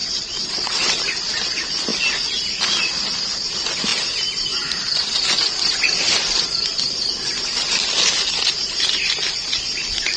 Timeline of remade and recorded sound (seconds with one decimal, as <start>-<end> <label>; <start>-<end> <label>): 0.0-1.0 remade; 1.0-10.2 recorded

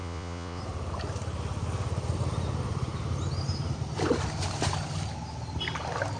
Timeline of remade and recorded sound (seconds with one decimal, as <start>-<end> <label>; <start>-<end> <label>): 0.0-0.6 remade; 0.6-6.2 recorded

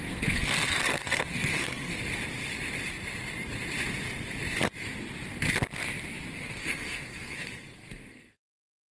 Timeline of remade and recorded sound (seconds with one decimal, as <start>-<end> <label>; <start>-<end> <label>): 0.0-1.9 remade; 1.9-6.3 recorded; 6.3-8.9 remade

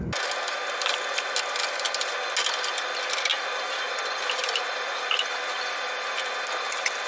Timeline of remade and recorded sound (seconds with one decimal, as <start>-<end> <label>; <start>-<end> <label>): 0.0-7.1 recorded

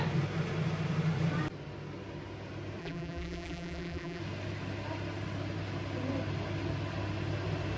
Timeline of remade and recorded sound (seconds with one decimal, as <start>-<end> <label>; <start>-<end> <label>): 0.0-2.8 recorded; 2.8-4.2 remade; 4.2-7.8 recorded

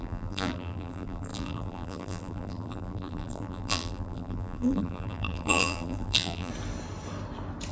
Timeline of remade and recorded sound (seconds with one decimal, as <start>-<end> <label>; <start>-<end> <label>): 0.0-6.5 remade; 6.5-7.7 recorded